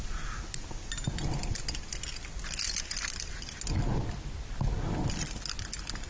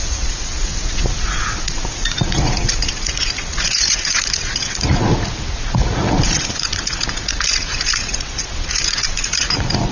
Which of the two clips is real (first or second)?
first